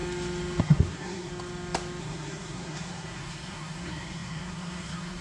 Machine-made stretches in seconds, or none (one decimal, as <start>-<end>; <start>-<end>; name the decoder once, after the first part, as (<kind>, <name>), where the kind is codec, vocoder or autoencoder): 0.6-1.3 (codec, SNAC); 2.0-5.2